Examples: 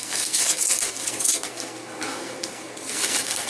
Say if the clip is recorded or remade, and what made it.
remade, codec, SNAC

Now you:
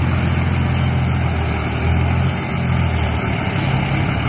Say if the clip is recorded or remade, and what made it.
recorded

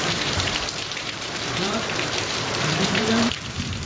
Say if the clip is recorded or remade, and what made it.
remade, vocoder, BigVGAN v2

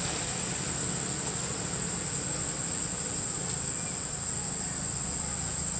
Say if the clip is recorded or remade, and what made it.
recorded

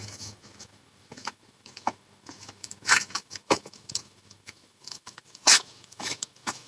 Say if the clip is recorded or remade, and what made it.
remade, autoencoder, DAC-VAE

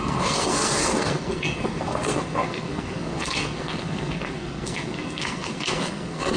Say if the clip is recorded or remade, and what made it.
remade, codec, SNAC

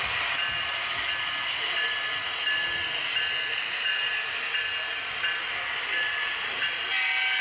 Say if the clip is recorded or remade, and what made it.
recorded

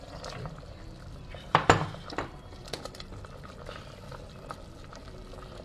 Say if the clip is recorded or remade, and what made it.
remade, vocoder, BigVGAN v2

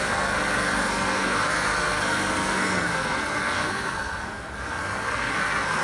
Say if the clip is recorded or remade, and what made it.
remade, codec, SNAC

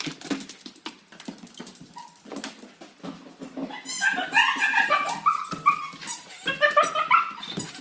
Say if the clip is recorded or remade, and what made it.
recorded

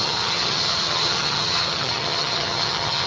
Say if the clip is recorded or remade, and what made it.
remade, vocoder, HiFi-GAN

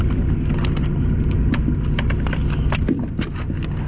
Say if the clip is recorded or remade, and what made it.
recorded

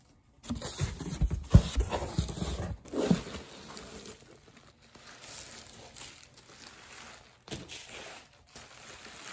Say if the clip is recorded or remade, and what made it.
recorded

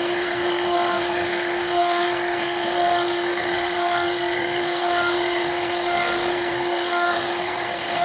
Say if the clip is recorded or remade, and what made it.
remade, codec, SNAC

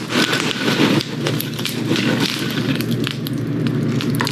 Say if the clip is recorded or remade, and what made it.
recorded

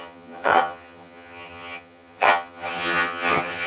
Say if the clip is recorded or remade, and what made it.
remade, vocoder, HiFi-GAN